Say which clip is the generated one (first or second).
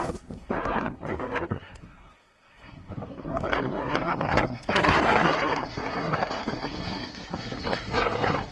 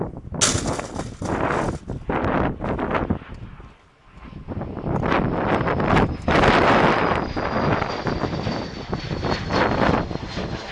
first